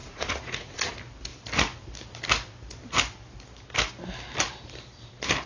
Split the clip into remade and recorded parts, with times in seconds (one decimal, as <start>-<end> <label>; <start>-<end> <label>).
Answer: 0.0-0.9 remade; 0.9-5.5 recorded